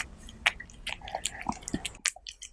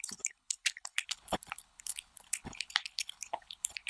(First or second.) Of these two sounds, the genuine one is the first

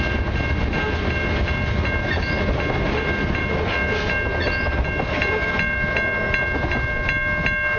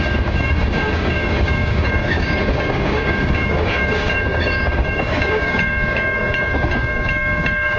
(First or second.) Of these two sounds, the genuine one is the first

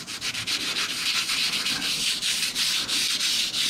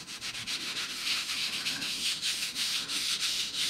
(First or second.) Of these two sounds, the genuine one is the first